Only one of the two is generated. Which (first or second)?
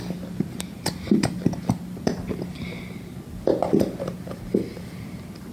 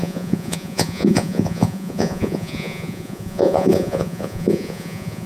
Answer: second